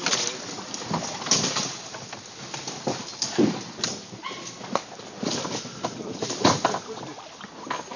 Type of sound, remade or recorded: recorded